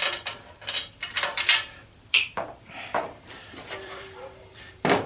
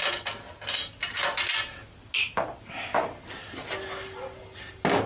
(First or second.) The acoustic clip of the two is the second